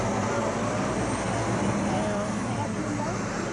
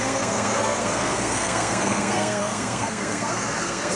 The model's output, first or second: second